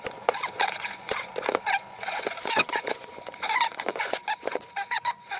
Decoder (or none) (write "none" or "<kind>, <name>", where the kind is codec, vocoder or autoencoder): vocoder, Vocos